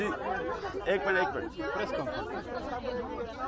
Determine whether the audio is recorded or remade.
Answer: recorded